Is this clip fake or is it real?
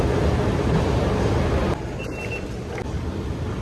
real